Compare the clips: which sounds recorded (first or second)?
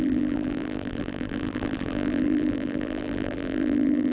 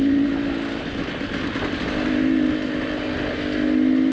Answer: second